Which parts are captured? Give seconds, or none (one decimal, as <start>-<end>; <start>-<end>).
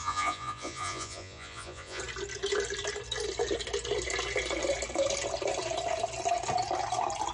2.0-7.3